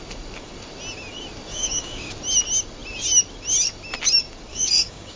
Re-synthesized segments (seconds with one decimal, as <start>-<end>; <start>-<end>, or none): 1.5-2.1; 4.5-5.2